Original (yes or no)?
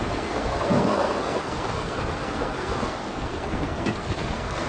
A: no